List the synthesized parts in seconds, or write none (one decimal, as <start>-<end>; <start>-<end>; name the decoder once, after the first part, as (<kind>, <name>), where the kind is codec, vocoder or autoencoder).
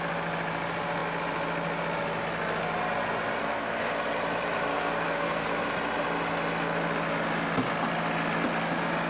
3.4-3.9 (codec, SNAC); 4.7-5.5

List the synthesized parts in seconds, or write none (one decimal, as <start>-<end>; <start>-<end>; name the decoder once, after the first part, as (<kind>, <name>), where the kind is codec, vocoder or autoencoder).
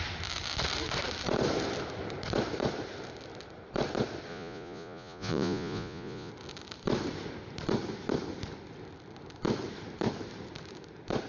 4.3-6.3 (vocoder, Vocos)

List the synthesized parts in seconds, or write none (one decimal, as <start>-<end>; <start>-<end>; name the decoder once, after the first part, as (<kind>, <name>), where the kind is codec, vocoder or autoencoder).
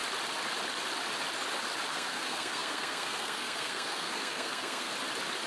1.9-4.9 (codec, SNAC)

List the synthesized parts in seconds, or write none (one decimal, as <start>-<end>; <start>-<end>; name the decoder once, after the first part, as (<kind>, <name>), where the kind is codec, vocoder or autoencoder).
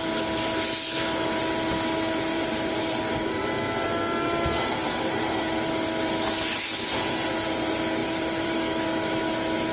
2.3-3.4 (vocoder, BigVGAN v2); 8.0-8.6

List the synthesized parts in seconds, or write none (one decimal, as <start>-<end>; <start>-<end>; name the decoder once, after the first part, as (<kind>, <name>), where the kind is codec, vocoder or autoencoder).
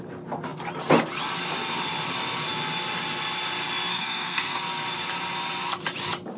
3.9-4.6 (codec, SNAC)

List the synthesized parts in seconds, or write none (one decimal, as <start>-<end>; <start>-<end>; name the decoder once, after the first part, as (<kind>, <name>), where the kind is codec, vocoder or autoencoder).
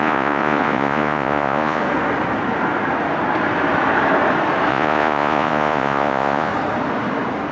0.0-1.8 (vocoder, Vocos); 4.7-6.5